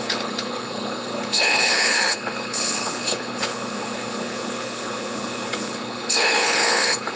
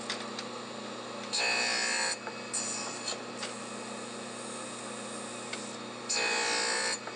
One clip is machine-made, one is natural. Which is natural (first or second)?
second